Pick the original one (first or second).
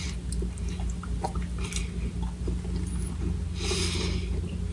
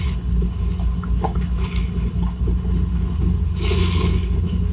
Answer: first